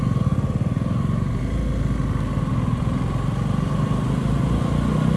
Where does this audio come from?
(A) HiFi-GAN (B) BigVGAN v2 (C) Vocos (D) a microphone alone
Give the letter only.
D